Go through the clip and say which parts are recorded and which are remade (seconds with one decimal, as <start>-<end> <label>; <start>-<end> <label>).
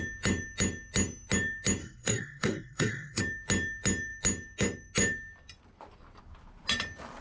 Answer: 0.0-1.8 recorded; 1.8-3.2 remade; 3.2-7.2 recorded